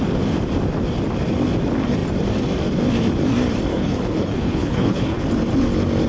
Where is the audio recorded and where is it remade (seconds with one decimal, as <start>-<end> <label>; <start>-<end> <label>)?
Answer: 0.0-3.7 recorded; 3.7-5.2 remade; 5.2-6.1 recorded